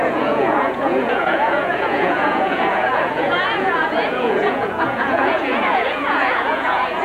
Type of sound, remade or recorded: remade